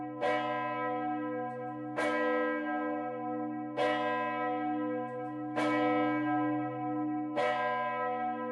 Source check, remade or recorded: recorded